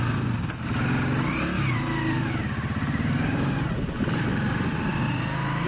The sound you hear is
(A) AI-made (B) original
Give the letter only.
B